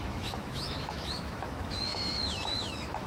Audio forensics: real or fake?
fake